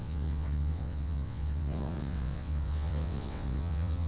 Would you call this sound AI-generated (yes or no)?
yes